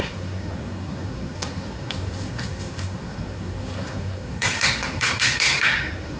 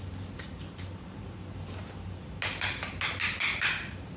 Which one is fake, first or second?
first